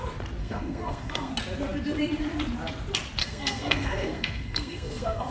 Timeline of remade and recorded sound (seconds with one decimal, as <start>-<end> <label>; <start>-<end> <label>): 0.0-0.4 recorded; 0.4-1.3 remade; 1.3-3.2 recorded; 3.2-5.3 remade